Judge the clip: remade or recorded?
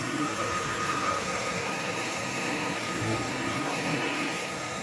remade